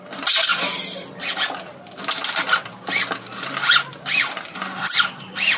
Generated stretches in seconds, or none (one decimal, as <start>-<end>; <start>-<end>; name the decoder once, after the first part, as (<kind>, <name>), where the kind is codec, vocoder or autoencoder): none